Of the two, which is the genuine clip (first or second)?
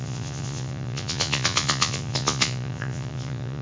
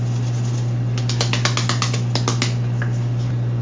second